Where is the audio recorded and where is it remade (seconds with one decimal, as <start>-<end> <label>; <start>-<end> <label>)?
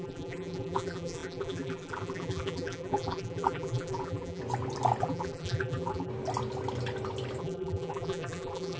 0.0-4.4 remade; 4.4-5.0 recorded; 5.0-6.1 remade; 6.1-7.4 recorded; 7.4-8.8 remade